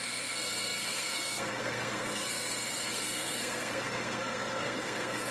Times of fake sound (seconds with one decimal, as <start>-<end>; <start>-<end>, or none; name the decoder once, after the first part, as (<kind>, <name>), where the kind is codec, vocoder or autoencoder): 0.0-5.3 (codec, SNAC)